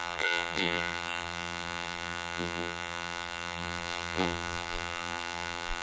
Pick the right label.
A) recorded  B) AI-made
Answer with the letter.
B